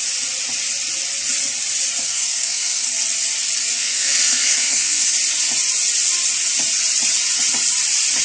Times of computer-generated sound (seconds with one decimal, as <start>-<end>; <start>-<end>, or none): 2.0-2.9; 3.7-5.1